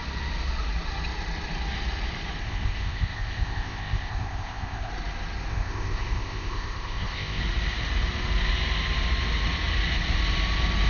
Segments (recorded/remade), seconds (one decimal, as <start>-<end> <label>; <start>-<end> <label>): 0.0-2.4 recorded; 2.4-4.9 remade; 4.9-5.5 recorded; 5.5-7.4 remade; 7.4-10.9 recorded